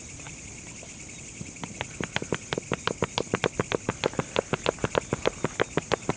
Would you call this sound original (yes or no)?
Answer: yes